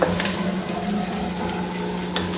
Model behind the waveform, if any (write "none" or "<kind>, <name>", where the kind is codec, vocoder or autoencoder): none